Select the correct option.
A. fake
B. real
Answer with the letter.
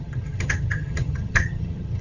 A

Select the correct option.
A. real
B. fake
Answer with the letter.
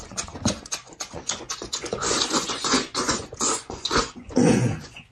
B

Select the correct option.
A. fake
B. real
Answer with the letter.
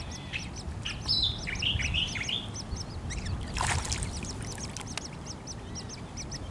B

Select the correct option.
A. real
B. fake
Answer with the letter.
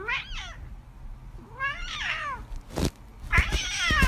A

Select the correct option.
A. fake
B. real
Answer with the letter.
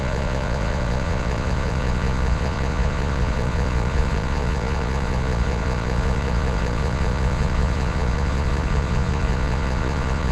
A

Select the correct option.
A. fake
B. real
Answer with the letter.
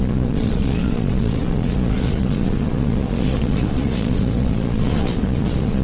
A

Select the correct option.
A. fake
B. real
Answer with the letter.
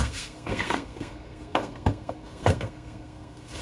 A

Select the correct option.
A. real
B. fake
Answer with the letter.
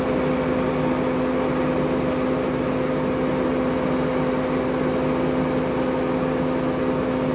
A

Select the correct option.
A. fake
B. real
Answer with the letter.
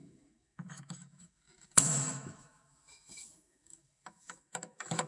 A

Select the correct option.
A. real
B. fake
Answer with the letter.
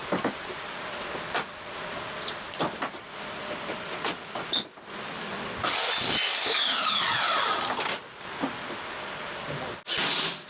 A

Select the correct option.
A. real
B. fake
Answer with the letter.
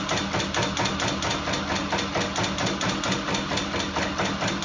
A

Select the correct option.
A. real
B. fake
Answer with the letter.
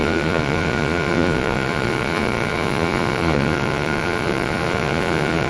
B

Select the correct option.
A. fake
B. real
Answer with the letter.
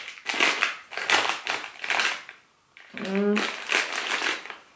B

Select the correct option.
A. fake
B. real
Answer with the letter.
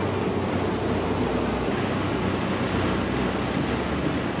B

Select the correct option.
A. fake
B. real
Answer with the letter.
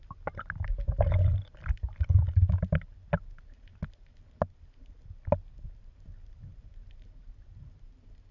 B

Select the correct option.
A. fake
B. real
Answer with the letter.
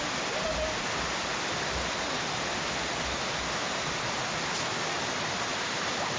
B